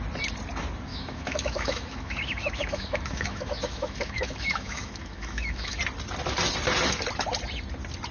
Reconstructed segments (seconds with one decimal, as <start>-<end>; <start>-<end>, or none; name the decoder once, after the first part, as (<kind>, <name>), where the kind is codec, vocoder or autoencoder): 0.9-5.8 (autoencoder, DAC-VAE)